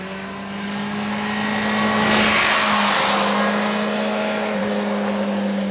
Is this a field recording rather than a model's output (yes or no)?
yes